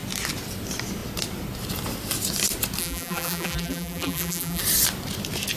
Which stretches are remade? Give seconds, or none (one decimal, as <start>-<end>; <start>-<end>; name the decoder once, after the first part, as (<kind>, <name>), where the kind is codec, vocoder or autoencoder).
2.8-4.6 (vocoder, BigVGAN v2)